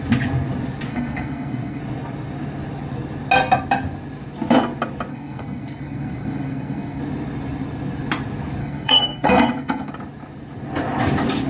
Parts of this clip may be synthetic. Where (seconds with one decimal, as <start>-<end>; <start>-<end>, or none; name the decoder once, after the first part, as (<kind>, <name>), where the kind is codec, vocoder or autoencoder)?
0.9-1.8 (codec, SNAC); 5.1-7.0; 8.6-9.9